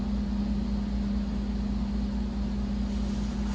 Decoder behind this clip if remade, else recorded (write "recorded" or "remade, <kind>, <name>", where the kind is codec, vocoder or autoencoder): recorded